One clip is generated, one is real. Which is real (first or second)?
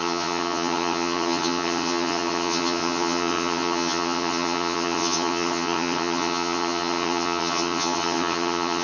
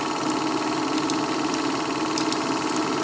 second